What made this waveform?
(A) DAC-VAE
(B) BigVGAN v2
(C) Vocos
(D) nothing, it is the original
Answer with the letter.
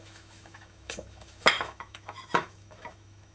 A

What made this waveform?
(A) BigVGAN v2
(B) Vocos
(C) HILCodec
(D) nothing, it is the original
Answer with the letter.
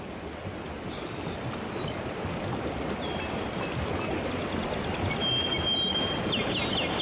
D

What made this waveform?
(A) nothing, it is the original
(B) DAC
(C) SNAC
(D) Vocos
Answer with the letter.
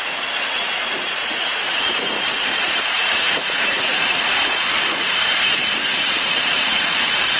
D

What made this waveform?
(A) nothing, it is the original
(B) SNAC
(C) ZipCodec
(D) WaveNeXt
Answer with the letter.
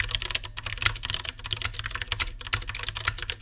A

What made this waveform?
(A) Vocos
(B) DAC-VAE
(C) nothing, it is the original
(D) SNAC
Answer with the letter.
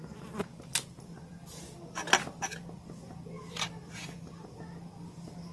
C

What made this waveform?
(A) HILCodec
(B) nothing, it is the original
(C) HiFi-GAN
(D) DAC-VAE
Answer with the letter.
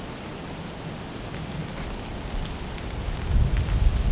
B